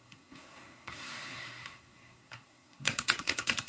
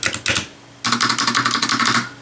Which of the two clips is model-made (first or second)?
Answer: first